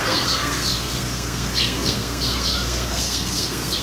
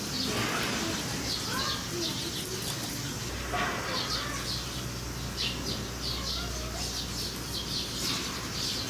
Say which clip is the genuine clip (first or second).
second